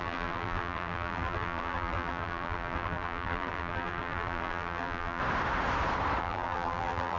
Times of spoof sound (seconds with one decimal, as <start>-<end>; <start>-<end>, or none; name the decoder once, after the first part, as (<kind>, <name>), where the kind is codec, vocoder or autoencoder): 0.0-5.2 (vocoder, BigVGAN v2); 6.2-7.2